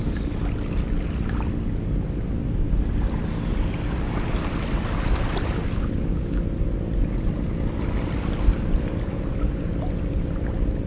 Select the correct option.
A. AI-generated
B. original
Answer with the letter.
B